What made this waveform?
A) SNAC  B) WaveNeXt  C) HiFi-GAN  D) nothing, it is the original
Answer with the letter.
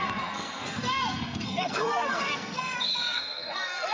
A